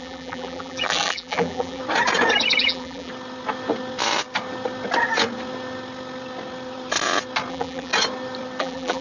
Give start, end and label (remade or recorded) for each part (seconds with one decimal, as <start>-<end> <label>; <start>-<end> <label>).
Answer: 0.0-1.8 remade; 1.8-2.6 recorded; 2.6-3.1 remade; 3.1-7.5 recorded; 7.5-7.9 remade; 7.9-8.6 recorded; 8.6-9.0 remade